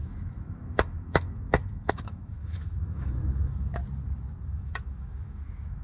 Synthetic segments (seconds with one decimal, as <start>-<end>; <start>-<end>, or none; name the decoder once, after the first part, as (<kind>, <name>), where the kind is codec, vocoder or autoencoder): 0.0-3.8 (autoencoder, DAC-VAE); 4.4-5.8